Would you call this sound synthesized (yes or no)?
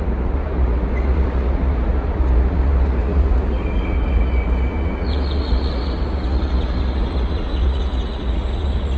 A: yes